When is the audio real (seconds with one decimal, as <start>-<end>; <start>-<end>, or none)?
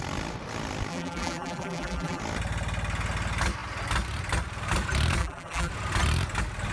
0.0-0.9; 2.2-5.2; 5.7-6.7